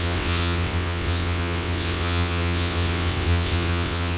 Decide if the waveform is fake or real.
fake